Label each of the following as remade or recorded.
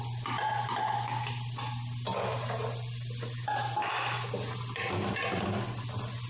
recorded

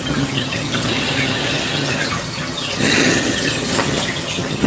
remade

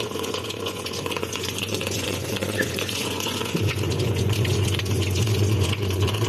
remade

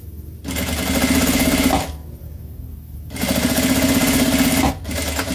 recorded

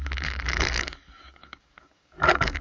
remade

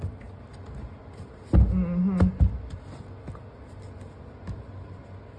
recorded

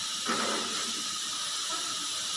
remade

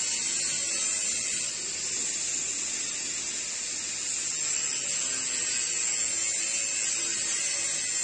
recorded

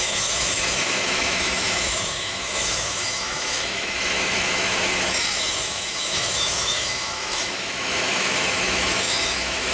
remade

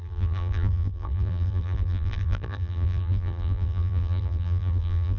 remade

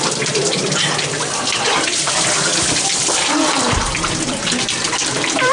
remade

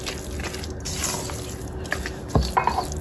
recorded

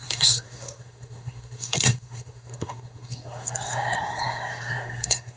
remade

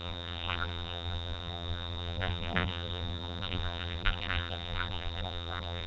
remade